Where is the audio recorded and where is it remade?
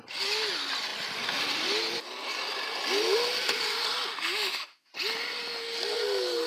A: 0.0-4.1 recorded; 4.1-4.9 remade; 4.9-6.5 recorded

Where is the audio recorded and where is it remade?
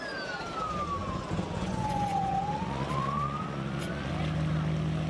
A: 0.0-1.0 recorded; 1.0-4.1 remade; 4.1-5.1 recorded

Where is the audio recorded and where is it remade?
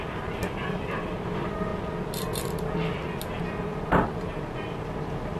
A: 0.0-1.7 remade; 1.7-3.4 recorded; 3.4-5.4 remade